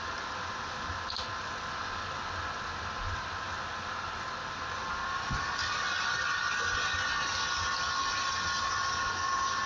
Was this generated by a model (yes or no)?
no